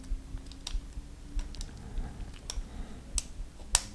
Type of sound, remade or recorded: recorded